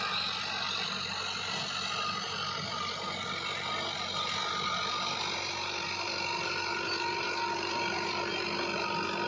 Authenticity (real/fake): real